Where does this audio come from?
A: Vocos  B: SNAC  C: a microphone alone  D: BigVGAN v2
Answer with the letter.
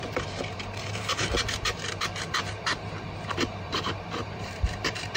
D